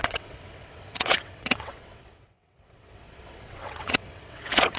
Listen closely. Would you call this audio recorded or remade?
remade